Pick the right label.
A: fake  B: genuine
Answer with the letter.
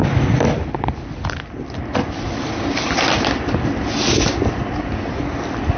B